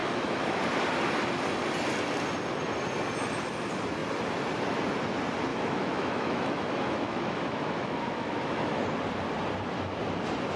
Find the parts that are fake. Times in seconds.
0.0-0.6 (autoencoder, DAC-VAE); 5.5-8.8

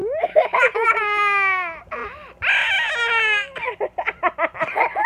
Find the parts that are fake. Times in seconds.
0.0-0.6 (autoencoder, DAC-VAE)

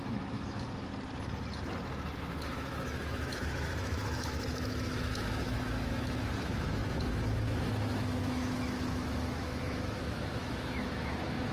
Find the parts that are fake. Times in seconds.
0.0-0.9 (autoencoder, DAC-VAE); 2.2-11.5

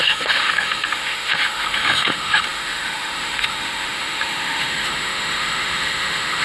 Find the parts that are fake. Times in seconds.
0.0-6.4 (autoencoder, DAC-VAE)

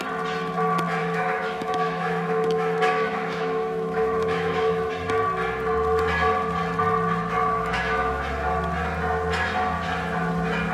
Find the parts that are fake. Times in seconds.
1.0-4.9 (autoencoder, DAC-VAE); 7.4-8.2

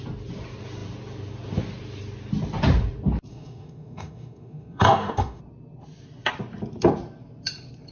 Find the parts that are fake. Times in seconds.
3.3-5.4 (autoencoder, DAC-VAE)

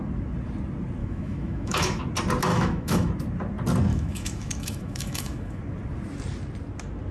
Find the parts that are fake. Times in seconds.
1.0-2.0 (autoencoder, DAC-VAE); 2.5-3.1; 3.9-5.6